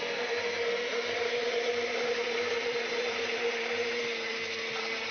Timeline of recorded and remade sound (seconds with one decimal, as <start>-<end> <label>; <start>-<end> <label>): 0.0-0.9 recorded; 0.9-4.0 remade; 4.0-5.1 recorded